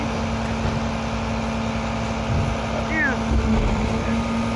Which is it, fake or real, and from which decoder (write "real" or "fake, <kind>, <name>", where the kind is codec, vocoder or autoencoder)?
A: real